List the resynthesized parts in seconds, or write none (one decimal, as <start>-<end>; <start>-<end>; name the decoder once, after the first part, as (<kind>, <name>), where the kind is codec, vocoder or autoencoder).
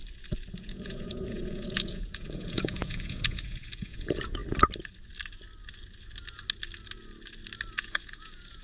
0.5-4.4 (vocoder, Vocos); 7.7-8.6